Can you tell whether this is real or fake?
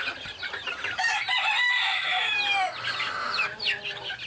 real